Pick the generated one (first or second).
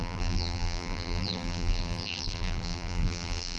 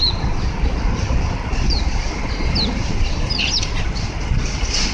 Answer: first